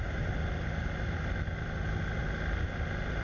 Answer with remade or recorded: recorded